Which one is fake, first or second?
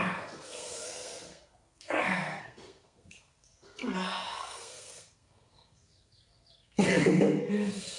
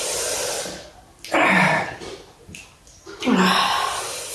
first